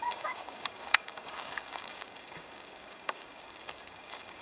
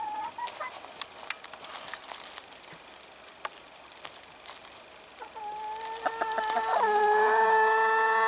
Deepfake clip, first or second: first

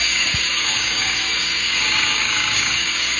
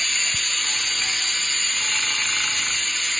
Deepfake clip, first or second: first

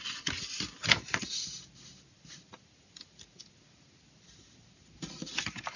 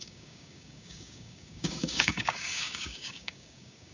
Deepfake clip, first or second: second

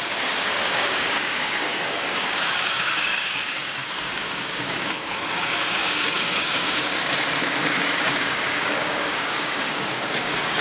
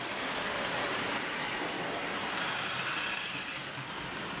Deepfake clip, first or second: first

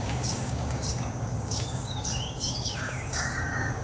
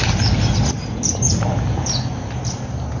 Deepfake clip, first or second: first